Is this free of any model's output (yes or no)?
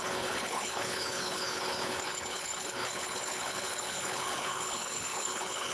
no